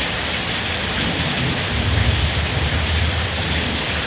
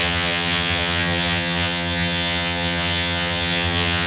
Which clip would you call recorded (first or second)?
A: first